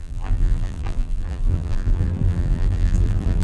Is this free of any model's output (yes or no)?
no